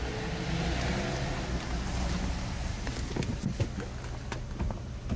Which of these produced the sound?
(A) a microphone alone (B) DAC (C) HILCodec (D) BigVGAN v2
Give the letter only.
A